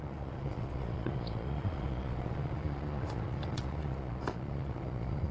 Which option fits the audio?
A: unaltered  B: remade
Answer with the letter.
B